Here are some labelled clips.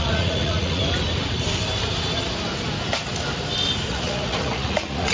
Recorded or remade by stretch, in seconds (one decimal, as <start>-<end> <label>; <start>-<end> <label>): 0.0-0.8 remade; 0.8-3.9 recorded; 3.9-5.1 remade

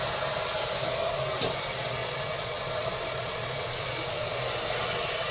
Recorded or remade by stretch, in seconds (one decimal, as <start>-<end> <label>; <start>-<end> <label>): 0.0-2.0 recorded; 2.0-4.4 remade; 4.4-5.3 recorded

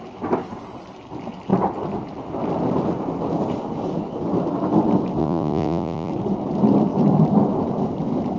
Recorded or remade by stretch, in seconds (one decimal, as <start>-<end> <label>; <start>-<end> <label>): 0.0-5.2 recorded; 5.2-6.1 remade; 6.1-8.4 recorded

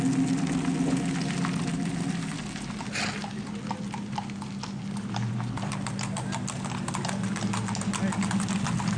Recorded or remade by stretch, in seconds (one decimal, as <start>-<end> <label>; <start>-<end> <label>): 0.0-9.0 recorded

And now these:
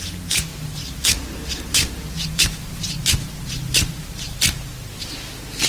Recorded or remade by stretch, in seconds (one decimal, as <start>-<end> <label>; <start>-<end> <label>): 0.0-5.7 recorded